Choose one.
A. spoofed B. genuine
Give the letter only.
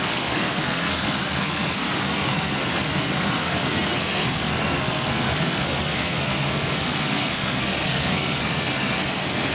A